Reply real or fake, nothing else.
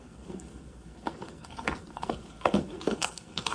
fake